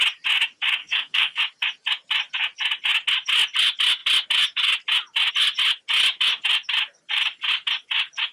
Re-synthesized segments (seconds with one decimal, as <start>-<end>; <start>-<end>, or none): 0.8-1.4